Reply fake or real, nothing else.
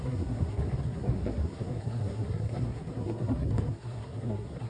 fake